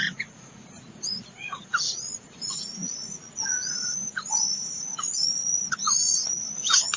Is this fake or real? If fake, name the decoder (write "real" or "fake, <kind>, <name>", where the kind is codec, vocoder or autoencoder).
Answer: fake, vocoder, Vocos